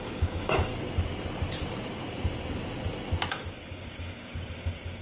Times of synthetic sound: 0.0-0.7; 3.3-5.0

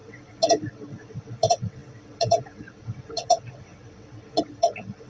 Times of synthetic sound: 0.0-5.1

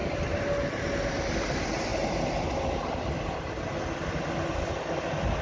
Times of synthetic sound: none

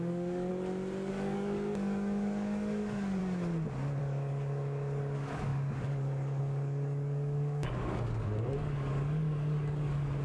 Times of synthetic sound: 0.0-0.5; 1.1-3.2; 4.0-10.2

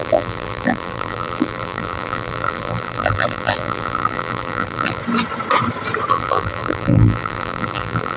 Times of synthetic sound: 0.0-5.0; 6.1-8.2

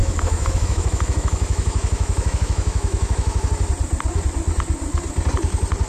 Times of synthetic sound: 0.0-3.5

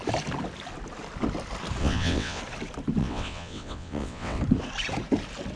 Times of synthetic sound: 1.8-2.4; 3.0-4.4